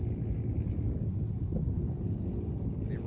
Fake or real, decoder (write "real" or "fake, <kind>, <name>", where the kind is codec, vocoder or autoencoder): real